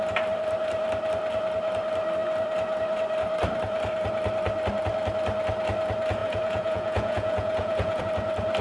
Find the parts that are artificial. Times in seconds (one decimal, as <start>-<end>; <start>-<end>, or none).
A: 6.2-8.0